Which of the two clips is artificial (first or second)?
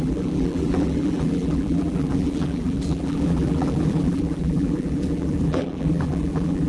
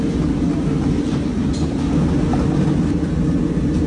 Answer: first